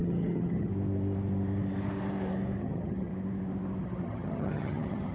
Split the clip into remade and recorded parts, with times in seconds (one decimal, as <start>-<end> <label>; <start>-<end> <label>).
0.0-0.7 remade; 0.7-2.6 recorded; 2.6-3.1 remade; 3.1-3.8 recorded; 3.8-5.1 remade